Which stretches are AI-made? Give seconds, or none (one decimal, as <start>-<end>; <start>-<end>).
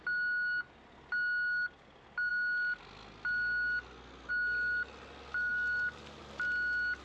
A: none